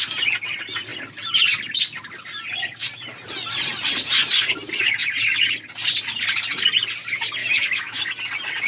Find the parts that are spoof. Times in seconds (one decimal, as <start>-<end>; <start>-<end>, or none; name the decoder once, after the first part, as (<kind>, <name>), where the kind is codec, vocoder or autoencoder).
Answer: 7.4-8.0 (autoencoder, DAC-VAE)